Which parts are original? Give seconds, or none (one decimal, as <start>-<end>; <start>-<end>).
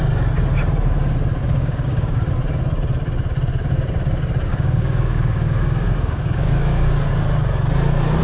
0.0-1.4; 2.3-4.5; 7.1-8.2